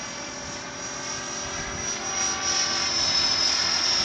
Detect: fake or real real